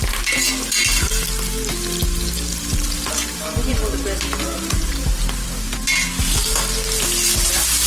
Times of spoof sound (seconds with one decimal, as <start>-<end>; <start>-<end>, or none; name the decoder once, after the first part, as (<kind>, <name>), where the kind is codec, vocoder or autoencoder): 2.5-6.1 (vocoder, BigVGAN v2)